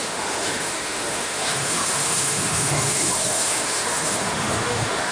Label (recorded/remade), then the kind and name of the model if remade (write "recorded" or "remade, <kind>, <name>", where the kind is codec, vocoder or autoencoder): remade, autoencoder, DAC-VAE